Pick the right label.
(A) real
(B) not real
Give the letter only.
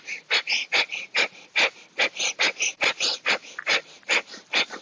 B